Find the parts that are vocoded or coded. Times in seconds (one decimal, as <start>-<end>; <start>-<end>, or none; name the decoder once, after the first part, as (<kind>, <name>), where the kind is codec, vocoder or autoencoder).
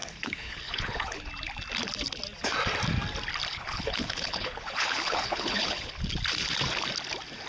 0.0-1.3 (codec, HILCodec); 3.5-6.0